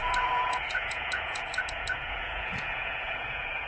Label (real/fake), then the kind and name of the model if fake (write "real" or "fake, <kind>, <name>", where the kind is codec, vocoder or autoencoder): fake, vocoder, Vocos